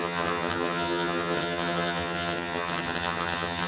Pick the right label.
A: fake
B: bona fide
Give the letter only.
A